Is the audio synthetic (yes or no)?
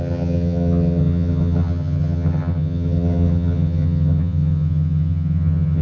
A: yes